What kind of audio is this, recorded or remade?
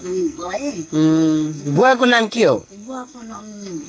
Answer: remade